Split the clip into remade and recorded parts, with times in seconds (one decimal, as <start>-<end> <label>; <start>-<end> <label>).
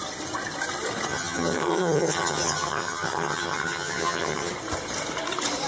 0.0-1.1 recorded; 1.1-4.5 remade; 4.5-5.7 recorded